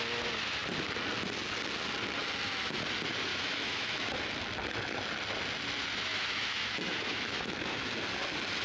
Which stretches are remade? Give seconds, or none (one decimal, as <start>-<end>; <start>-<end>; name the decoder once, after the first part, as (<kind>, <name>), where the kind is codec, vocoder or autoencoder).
3.3-4.1 (autoencoder, DAC-VAE); 6.1-8.0